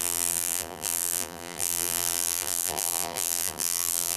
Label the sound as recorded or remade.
remade